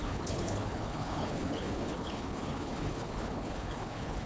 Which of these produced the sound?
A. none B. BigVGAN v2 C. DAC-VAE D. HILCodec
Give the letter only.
D